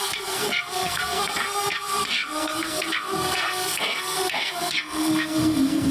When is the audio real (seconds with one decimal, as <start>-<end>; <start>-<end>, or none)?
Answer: none